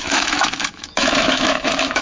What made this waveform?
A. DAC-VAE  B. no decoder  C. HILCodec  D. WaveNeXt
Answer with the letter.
A